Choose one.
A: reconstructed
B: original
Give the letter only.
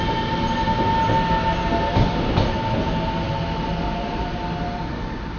B